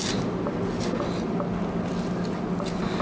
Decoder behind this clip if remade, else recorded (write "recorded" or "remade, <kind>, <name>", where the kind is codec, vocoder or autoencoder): recorded